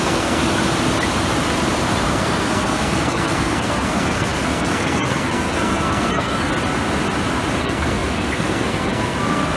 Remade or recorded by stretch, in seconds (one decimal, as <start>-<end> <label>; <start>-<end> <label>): 0.0-0.4 remade; 0.4-2.0 recorded; 2.0-6.5 remade; 6.5-7.6 recorded; 7.6-9.6 remade